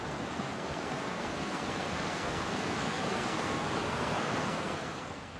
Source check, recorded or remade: remade